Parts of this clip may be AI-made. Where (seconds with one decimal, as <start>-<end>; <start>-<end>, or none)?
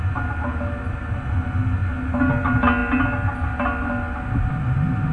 none